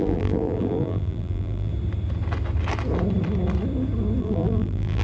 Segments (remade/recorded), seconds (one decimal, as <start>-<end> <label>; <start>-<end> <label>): 0.0-1.7 remade; 1.7-4.2 recorded; 4.2-5.0 remade